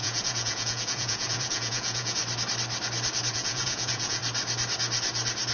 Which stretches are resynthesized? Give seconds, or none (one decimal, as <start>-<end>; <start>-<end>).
0.0-2.2; 3.3-4.2